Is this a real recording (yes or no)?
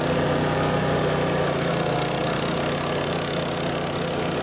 yes